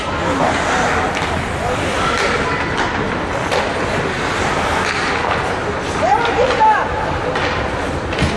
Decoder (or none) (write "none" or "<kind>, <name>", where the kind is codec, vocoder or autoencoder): none